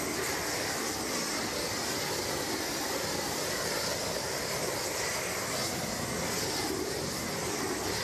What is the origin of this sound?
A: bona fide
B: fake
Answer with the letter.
A